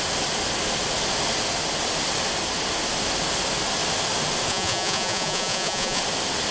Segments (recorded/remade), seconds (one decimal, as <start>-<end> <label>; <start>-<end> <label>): 0.0-4.5 recorded; 4.5-6.0 remade; 6.0-6.5 recorded